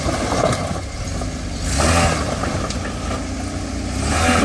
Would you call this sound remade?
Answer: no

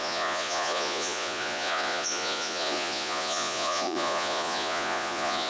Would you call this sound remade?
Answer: yes